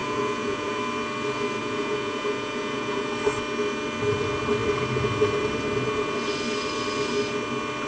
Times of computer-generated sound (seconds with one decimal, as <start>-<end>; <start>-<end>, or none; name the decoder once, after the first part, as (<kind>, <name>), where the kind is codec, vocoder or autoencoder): 0.0-0.8 (vocoder, Vocos); 1.6-3.1